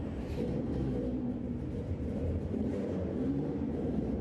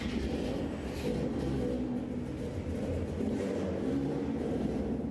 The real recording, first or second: second